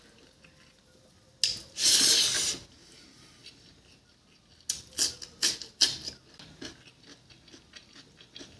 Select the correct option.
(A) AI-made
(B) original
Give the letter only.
B